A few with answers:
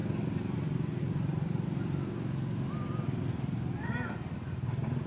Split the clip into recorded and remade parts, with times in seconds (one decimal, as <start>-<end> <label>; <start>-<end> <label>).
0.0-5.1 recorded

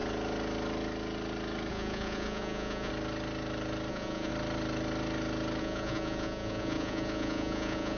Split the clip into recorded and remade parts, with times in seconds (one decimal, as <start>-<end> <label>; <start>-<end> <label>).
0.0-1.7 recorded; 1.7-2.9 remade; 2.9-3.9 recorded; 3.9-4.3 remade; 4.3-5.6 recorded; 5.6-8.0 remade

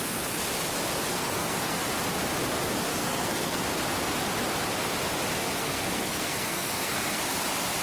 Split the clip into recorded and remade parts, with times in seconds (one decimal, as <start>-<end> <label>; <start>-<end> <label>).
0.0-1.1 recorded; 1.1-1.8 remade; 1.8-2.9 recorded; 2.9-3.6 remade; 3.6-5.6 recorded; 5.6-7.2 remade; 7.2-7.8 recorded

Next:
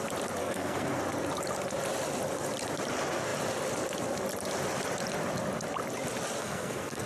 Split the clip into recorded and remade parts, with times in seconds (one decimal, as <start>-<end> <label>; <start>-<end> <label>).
0.0-0.4 recorded; 0.4-1.0 remade; 1.0-6.4 recorded; 6.4-7.1 remade